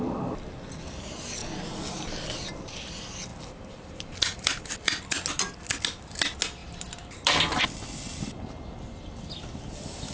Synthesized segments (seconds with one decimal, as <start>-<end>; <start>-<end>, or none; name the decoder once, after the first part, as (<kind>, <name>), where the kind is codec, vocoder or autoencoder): 3.3-4.7 (vocoder, BigVGAN v2); 6.6-7.6